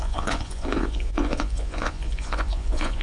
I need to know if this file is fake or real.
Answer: fake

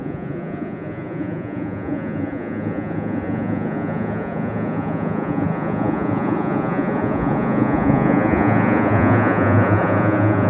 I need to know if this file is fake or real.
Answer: fake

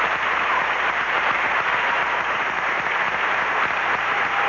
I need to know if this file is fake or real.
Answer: fake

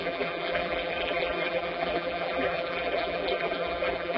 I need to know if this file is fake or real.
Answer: fake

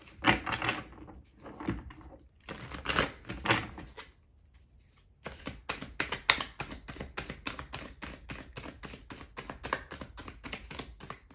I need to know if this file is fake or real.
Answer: real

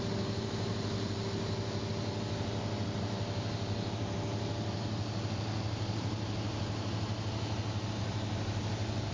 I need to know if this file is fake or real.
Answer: real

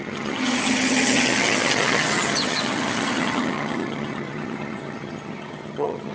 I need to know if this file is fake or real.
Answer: fake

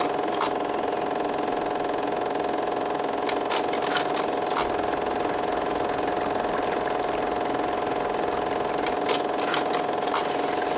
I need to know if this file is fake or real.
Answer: real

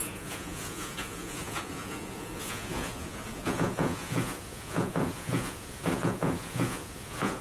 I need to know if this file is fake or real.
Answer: fake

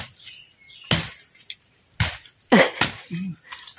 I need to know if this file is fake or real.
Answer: real